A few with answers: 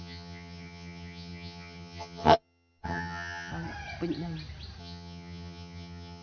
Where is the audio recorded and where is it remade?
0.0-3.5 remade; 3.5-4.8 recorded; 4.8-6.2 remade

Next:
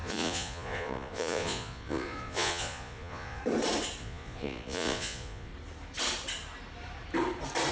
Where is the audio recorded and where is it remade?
0.0-3.4 remade; 3.4-4.0 recorded; 4.0-5.5 remade; 5.5-7.7 recorded